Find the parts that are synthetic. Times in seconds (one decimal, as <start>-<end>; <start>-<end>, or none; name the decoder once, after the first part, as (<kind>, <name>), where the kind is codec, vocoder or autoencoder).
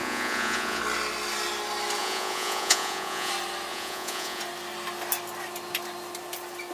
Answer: 0.0-0.8 (vocoder, Vocos); 2.0-3.3; 3.7-4.4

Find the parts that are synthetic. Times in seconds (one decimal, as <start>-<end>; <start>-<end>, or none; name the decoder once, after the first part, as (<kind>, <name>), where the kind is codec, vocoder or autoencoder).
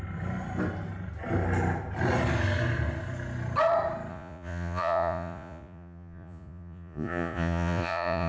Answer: 4.1-8.3 (vocoder, Vocos)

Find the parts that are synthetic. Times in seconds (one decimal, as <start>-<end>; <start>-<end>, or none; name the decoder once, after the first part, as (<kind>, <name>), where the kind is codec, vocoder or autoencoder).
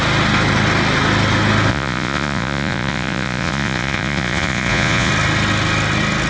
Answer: 1.7-5.1 (vocoder, Vocos)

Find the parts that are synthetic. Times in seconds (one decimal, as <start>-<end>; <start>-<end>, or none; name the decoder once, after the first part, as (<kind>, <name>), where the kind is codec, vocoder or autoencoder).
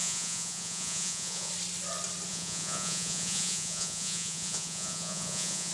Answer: 0.0-1.5 (vocoder, Vocos); 2.3-5.7